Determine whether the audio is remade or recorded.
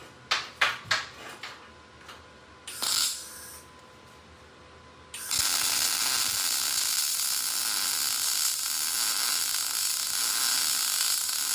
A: recorded